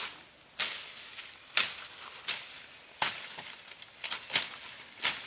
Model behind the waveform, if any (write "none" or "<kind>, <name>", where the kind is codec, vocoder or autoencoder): none